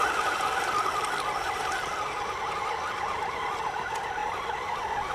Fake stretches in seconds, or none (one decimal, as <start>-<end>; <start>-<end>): none